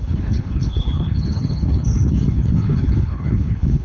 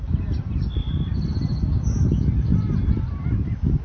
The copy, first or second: first